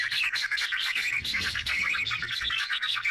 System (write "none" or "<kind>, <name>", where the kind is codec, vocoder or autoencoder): codec, SNAC